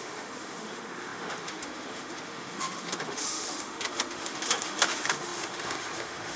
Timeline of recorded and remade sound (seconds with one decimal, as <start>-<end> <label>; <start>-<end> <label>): 0.0-6.4 remade